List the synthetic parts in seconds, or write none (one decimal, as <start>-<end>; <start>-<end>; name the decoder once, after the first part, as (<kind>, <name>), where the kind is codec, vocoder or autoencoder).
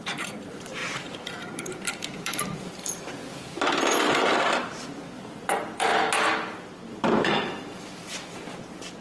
0.0-3.2 (vocoder, BigVGAN v2); 4.5-5.9; 6.9-9.0